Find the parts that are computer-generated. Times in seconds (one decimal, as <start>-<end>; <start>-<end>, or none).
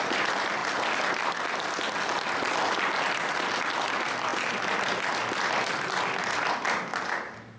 none